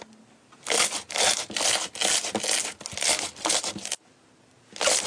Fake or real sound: real